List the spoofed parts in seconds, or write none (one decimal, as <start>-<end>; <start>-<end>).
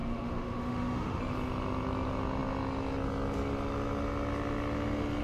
0.0-1.2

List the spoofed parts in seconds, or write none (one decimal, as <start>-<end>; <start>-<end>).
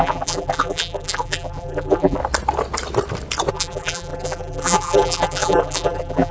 0.0-2.2; 3.5-6.3